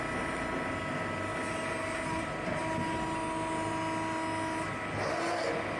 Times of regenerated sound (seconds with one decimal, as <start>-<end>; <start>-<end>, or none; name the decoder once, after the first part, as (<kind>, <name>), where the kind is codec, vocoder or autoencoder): none